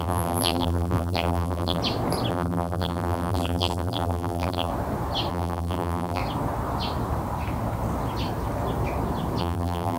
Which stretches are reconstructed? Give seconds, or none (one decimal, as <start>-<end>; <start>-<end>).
0.0-1.8; 2.3-4.7; 5.3-6.2; 9.4-10.0